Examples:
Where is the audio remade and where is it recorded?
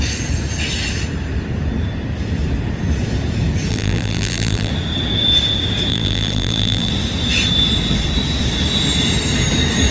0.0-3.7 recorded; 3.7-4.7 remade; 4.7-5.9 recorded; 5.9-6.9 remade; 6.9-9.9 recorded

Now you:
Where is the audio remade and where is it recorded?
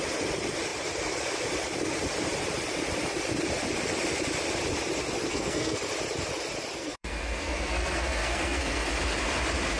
0.0-5.3 recorded; 5.3-5.8 remade; 5.8-6.8 recorded; 6.8-8.9 remade; 8.9-9.8 recorded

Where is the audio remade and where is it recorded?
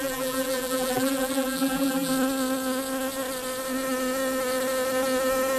0.0-2.1 remade; 2.1-5.6 recorded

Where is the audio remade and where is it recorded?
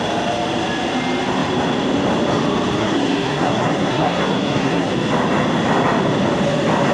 0.0-2.8 recorded; 2.8-4.9 remade; 4.9-6.9 recorded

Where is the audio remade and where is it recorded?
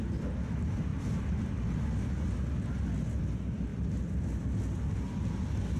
0.0-0.9 recorded; 0.9-1.5 remade; 1.5-5.8 recorded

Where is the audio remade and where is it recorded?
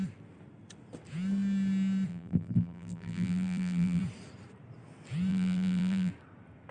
0.0-2.1 recorded; 2.1-4.0 remade; 4.0-5.3 recorded; 5.3-6.1 remade; 6.1-6.7 recorded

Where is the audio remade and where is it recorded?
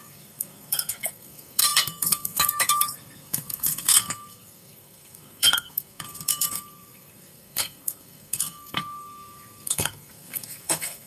0.0-11.1 remade